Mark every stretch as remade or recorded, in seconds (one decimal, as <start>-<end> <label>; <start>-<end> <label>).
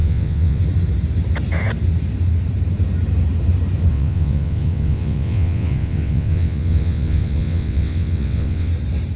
0.0-0.6 remade; 0.6-3.9 recorded; 3.9-8.7 remade; 8.7-9.2 recorded